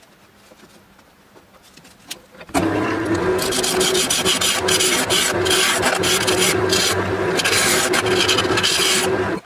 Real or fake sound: real